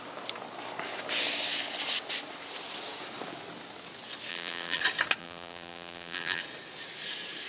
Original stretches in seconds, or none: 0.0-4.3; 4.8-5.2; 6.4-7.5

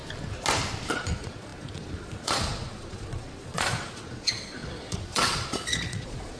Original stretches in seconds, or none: 0.0-0.9

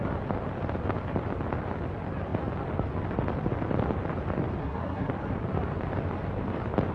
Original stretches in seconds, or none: 0.0-4.6; 5.1-6.9

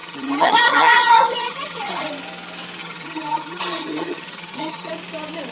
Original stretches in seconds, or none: 2.1-2.8; 4.9-5.5

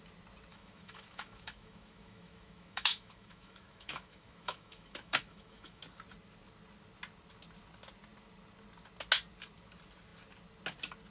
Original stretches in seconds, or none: 0.0-0.5; 5.8-11.1

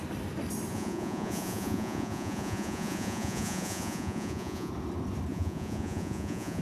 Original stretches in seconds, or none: 0.0-0.7; 4.7-5.3